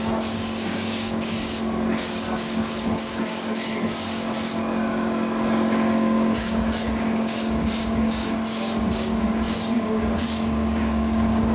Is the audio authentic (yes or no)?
no